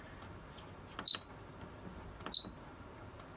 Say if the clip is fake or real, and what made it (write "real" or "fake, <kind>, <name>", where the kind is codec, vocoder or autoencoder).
real